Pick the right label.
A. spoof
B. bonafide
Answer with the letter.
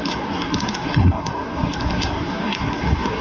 A